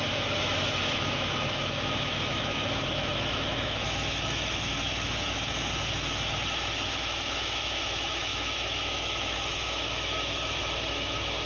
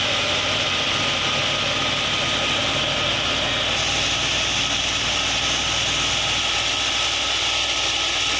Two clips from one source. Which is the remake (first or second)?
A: first